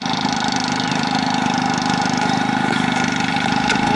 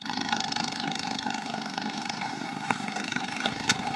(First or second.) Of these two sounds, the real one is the first